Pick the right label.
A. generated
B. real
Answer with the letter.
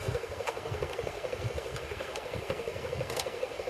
A